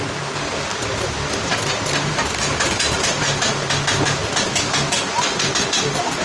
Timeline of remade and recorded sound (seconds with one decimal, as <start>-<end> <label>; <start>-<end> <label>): 0.0-6.2 recorded